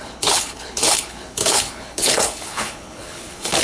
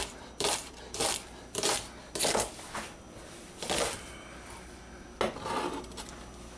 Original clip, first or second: second